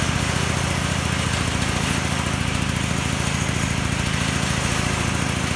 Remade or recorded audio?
recorded